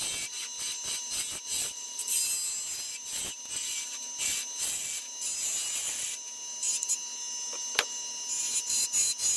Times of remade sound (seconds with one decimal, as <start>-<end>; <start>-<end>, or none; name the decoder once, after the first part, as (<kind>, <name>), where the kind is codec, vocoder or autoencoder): 1.6-2.2 (vocoder, BigVGAN v2)